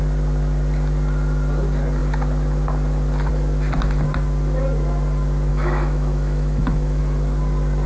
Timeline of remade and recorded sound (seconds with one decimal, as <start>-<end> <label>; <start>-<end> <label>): 0.0-5.5 recorded; 5.5-7.0 remade; 7.0-7.9 recorded